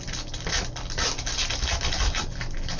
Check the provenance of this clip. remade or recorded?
recorded